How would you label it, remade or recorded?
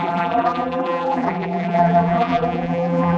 remade